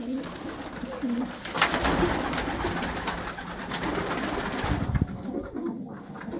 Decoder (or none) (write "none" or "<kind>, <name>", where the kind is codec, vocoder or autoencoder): none